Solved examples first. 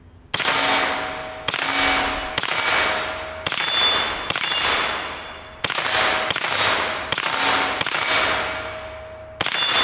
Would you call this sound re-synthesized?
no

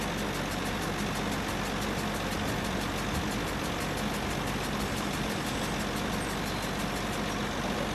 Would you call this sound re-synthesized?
no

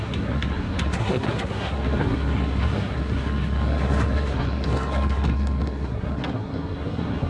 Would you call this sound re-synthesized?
yes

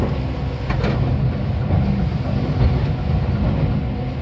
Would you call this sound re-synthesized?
no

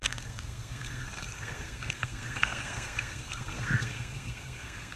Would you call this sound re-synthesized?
yes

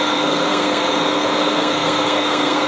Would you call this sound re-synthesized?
yes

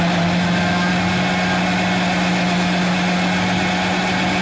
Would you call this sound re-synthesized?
no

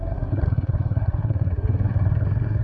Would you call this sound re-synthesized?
yes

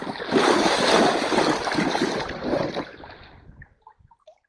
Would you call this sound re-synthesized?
no